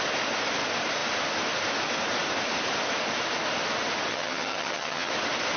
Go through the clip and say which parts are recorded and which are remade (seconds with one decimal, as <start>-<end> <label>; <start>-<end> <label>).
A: 0.0-4.1 recorded; 4.1-5.1 remade; 5.1-5.6 recorded